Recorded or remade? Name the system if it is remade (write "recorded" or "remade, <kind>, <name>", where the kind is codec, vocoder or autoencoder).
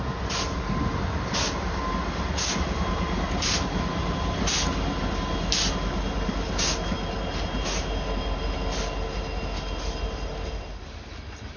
recorded